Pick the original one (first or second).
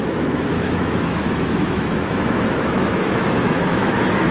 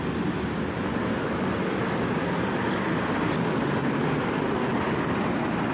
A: second